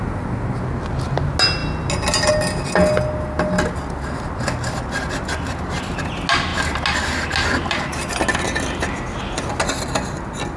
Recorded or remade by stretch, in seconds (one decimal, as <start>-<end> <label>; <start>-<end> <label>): 0.0-10.6 recorded